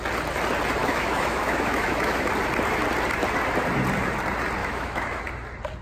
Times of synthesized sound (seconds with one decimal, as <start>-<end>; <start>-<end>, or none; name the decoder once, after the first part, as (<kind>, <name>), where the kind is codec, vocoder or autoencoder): 0.8-2.3 (autoencoder, DAC-VAE); 4.6-5.2